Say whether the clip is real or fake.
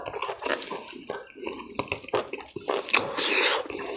real